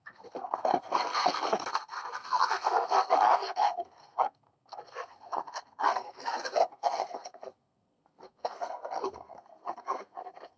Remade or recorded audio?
remade